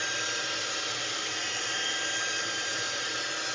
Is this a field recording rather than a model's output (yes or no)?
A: yes